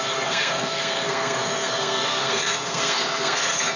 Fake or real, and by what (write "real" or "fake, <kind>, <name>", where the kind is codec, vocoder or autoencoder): fake, codec, SNAC